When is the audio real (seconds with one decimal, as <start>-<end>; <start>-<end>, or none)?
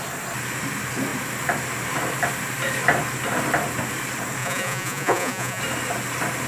0.0-4.4; 5.6-6.5